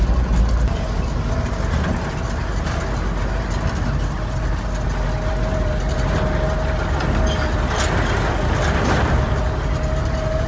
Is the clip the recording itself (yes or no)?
yes